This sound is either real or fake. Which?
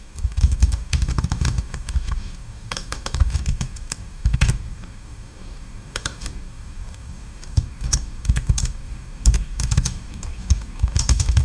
fake